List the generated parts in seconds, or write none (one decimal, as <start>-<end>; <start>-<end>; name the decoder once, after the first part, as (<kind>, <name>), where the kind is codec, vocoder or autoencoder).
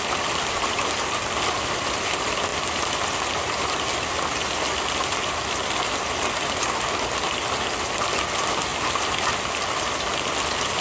none